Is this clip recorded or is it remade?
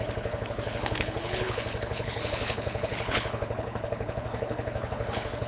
remade